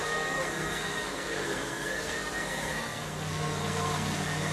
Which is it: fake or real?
fake